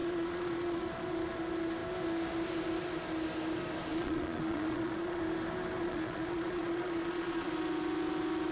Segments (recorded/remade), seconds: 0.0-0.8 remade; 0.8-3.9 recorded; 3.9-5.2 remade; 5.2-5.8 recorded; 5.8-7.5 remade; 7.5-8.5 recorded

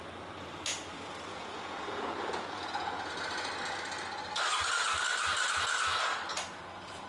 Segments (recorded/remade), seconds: 0.0-1.3 recorded; 1.3-3.1 remade; 3.1-7.1 recorded

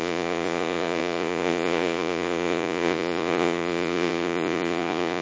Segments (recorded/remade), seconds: 0.0-5.2 remade

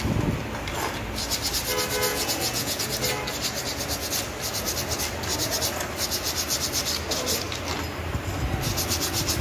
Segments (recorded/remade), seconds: 0.0-2.1 recorded; 2.1-2.8 remade; 2.8-9.4 recorded

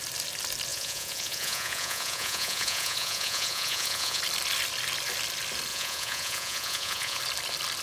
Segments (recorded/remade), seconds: 0.0-0.7 recorded; 0.7-4.2 remade; 4.2-5.7 recorded; 5.7-7.2 remade; 7.2-7.8 recorded

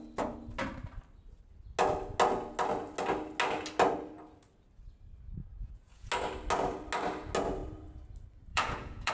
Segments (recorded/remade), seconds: 0.0-5.4 recorded; 5.4-6.1 remade; 6.1-8.5 recorded; 8.5-9.1 remade